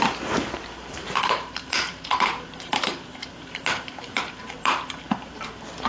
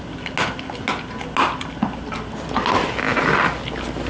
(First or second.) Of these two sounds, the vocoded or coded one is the first